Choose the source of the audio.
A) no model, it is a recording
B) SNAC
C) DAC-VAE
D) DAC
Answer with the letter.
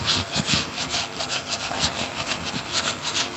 B